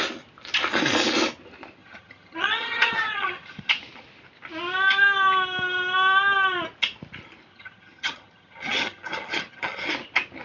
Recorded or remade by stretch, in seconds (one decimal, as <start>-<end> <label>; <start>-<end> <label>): 0.0-1.8 recorded; 1.8-3.7 remade; 3.7-7.5 recorded; 7.5-9.9 remade; 9.9-10.4 recorded